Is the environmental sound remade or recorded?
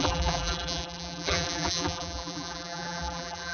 remade